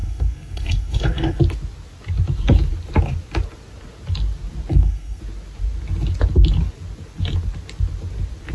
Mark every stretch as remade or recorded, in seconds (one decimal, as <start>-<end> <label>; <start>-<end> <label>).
0.0-1.4 remade; 1.4-4.7 recorded; 4.7-5.2 remade; 5.2-8.5 recorded